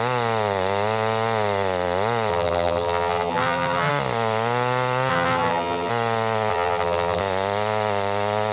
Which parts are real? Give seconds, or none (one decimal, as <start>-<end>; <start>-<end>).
0.0-2.3; 3.9-5.1; 5.9-6.5; 7.2-8.5

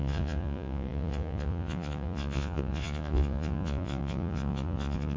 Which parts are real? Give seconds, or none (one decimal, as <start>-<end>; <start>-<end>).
none

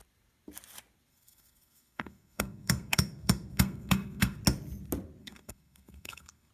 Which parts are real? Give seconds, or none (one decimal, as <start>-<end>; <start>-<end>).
0.0-1.1; 4.4-5.2

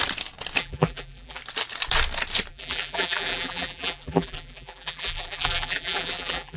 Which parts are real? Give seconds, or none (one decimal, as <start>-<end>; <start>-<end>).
0.0-0.6; 1.4-2.5